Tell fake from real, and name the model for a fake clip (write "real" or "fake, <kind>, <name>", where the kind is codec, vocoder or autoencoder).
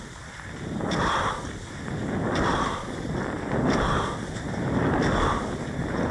real